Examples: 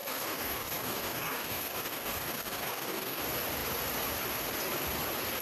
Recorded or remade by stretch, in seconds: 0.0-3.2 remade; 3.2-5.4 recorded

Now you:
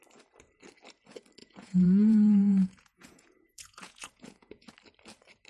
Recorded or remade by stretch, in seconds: 0.0-1.4 recorded; 1.4-4.7 remade; 4.7-5.5 recorded

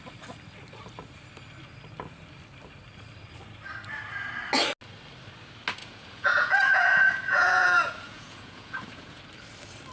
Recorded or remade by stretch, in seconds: 0.0-5.8 recorded; 5.8-9.2 remade; 9.2-9.9 recorded

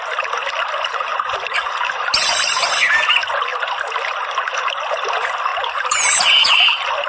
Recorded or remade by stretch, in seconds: 0.0-5.5 recorded; 5.5-6.0 remade; 6.0-7.1 recorded

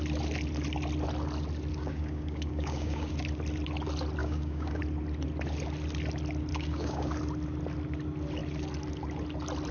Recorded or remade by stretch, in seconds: 0.0-1.7 recorded; 1.7-3.1 remade; 3.1-4.2 recorded; 4.2-4.8 remade; 4.8-6.5 recorded; 6.5-7.1 remade; 7.1-9.7 recorded

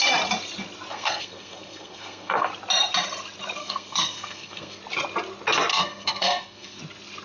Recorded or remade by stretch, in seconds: 0.0-0.9 recorded; 0.9-2.5 remade; 2.5-3.6 recorded; 3.6-4.8 remade; 4.8-5.7 recorded; 5.7-6.8 remade; 6.8-7.2 recorded

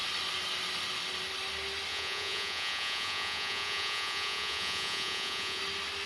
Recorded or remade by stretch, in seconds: 0.0-1.9 recorded; 1.9-5.6 remade; 5.6-6.1 recorded